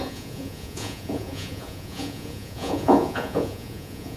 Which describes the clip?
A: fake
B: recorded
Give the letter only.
A